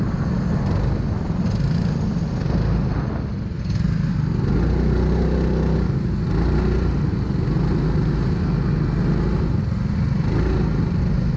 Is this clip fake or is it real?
real